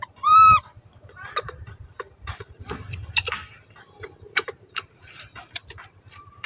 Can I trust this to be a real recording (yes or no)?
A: no